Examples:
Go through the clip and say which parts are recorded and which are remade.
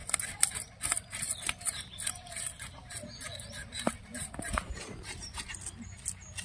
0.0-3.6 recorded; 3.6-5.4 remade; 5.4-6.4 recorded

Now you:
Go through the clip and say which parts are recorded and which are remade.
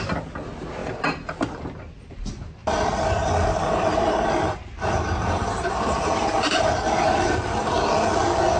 0.0-2.6 recorded; 2.6-3.3 remade; 3.3-3.9 recorded; 3.9-7.3 remade; 7.3-8.6 recorded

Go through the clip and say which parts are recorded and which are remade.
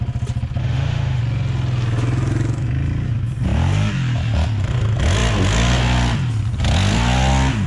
0.0-0.6 recorded; 0.6-1.2 remade; 1.2-7.7 recorded